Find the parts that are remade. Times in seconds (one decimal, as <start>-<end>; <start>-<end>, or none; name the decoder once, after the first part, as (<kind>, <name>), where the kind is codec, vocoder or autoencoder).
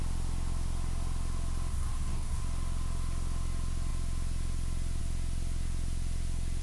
1.7-2.4 (codec, SNAC)